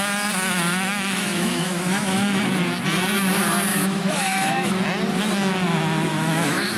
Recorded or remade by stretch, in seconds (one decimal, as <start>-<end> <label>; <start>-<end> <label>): 0.0-0.9 recorded; 0.9-2.4 remade; 2.4-3.7 recorded; 3.7-4.7 remade; 4.7-6.1 recorded; 6.1-6.8 remade